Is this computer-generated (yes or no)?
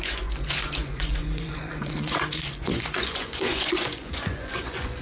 yes